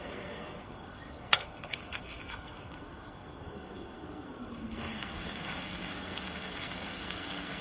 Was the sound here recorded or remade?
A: remade